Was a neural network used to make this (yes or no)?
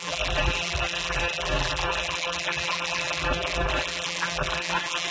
yes